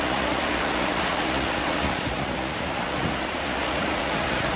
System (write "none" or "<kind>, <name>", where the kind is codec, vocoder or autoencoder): vocoder, Vocos